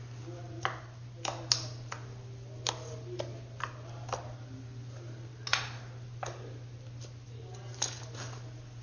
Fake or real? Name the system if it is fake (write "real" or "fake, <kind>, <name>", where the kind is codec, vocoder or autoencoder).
real